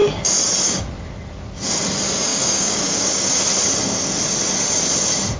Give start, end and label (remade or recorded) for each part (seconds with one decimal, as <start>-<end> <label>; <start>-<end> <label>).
0.0-2.3 recorded; 2.3-3.3 remade; 3.3-5.4 recorded